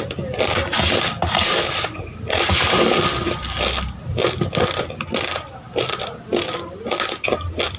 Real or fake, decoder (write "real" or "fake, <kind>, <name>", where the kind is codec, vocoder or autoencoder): real